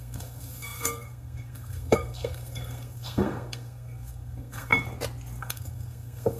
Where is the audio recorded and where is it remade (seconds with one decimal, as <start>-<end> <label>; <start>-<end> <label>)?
0.0-4.7 remade; 4.7-5.4 recorded; 5.4-6.4 remade